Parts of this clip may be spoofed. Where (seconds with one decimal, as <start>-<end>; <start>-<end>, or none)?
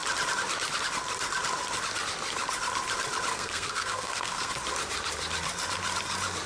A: 3.3-4.5